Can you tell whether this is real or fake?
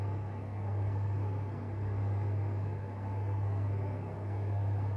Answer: fake